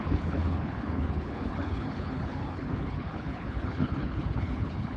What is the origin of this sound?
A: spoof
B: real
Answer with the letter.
A